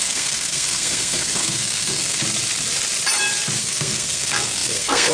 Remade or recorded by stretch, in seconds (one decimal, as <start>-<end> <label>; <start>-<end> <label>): 0.0-2.2 remade; 2.2-3.6 recorded; 3.6-5.1 remade